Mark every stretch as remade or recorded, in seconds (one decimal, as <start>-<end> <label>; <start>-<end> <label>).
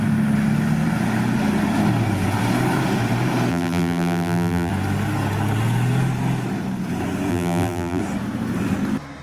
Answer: 0.0-3.5 recorded; 3.5-4.7 remade; 4.7-7.3 recorded; 7.3-8.0 remade; 8.0-9.2 recorded